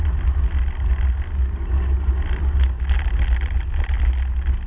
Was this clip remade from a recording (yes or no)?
no